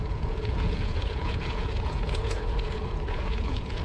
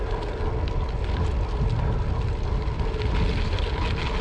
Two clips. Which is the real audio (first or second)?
second